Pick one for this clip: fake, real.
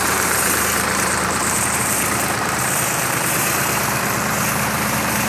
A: fake